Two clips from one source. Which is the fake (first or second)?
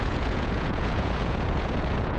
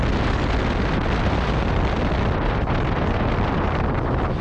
first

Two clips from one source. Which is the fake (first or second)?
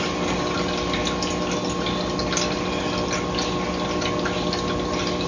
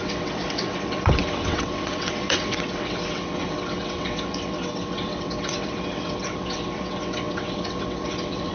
second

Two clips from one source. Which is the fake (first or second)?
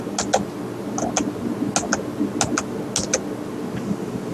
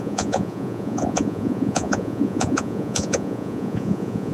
second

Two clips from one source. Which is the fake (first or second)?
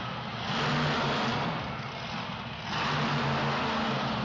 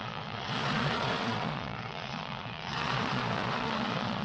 second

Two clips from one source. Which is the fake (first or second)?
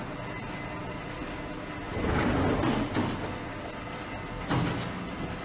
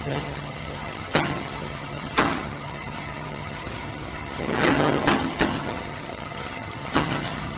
second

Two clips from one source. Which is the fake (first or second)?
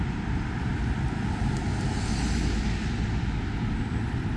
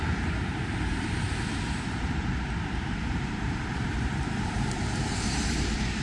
second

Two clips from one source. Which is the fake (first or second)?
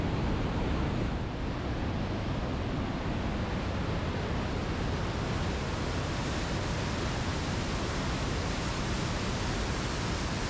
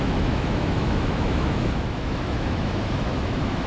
second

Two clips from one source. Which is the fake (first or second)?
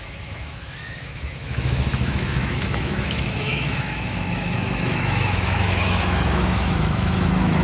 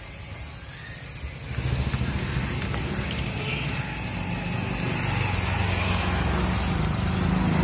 first